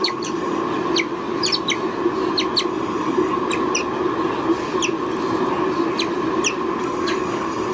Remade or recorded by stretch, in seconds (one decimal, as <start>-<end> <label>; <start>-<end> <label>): 0.0-0.6 remade; 0.6-2.7 recorded; 2.7-3.3 remade; 3.3-6.8 recorded; 6.8-7.7 remade

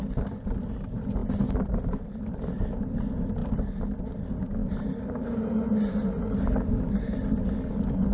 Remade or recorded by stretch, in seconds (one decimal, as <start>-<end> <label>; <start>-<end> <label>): 0.0-8.1 recorded

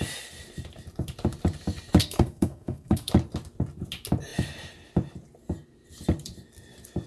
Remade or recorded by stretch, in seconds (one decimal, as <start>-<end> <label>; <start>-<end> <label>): 0.0-2.0 recorded; 2.0-3.1 remade; 3.1-7.1 recorded

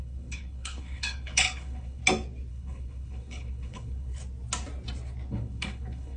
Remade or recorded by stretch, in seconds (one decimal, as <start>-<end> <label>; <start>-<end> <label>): 0.0-2.0 remade; 2.0-2.5 recorded; 2.5-4.2 remade; 4.2-5.3 recorded; 5.3-6.2 remade

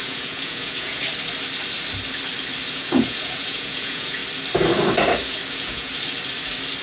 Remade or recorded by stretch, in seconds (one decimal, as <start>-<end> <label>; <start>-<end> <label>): 0.0-1.0 remade; 1.0-2.7 recorded; 2.7-4.2 remade; 4.2-5.5 recorded; 5.5-5.9 remade; 5.9-6.8 recorded

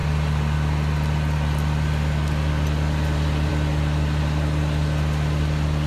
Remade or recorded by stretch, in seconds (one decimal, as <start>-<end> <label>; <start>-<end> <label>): 0.0-5.9 recorded